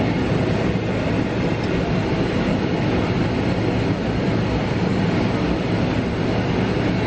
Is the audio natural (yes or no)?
yes